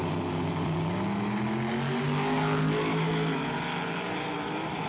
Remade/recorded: recorded